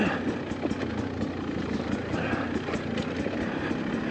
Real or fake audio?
real